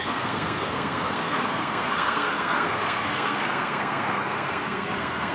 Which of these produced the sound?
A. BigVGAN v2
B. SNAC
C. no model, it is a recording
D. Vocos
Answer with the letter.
B